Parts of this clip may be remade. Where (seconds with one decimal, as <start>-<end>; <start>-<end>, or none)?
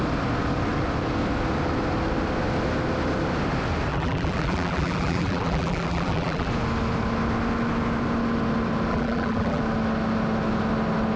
3.9-6.5; 8.9-9.6